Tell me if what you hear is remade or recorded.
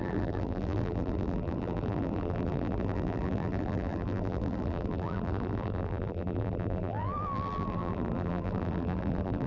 remade